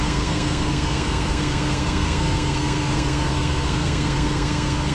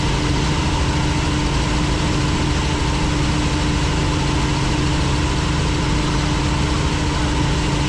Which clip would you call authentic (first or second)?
second